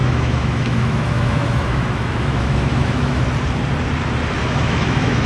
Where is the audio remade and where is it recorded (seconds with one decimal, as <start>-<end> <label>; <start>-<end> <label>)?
0.0-3.2 remade; 3.2-4.4 recorded; 4.4-5.3 remade